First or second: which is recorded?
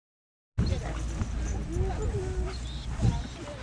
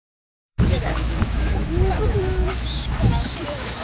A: first